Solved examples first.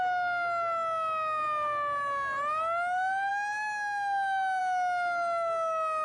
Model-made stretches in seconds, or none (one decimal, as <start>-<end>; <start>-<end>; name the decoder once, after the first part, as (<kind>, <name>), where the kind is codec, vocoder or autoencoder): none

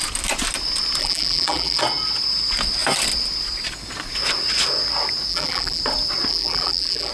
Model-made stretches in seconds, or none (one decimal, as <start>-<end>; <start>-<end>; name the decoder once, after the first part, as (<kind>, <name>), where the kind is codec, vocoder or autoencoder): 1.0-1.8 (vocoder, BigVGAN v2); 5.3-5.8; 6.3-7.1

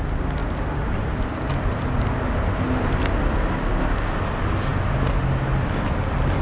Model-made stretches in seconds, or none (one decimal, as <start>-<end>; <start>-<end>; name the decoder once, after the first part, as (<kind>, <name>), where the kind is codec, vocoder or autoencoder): none

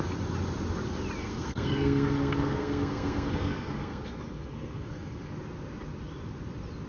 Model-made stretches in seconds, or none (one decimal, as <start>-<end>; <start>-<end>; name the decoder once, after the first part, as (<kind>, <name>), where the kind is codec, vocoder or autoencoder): 1.2-5.3 (codec, SNAC)

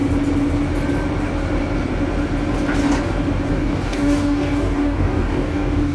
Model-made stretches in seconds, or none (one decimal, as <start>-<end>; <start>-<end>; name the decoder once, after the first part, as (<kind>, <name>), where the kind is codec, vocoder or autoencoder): 3.5-5.9 (codec, DAC)

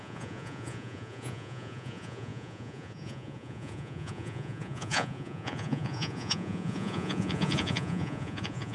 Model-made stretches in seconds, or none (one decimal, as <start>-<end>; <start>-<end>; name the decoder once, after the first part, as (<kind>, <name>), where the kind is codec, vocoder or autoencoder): 0.0-8.7 (vocoder, Vocos)